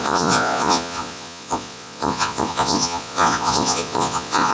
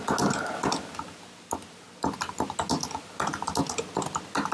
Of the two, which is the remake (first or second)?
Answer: first